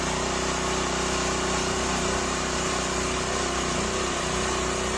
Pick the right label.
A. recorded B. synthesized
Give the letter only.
A